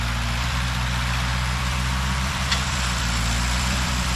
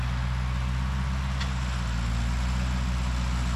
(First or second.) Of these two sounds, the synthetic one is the first